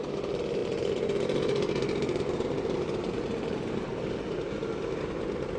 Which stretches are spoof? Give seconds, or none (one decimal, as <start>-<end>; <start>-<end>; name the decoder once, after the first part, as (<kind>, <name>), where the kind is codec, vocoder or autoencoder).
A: none